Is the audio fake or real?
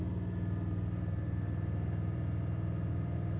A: real